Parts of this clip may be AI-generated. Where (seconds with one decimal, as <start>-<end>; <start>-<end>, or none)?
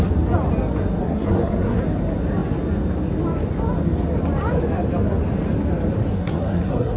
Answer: 1.0-1.8; 6.1-7.0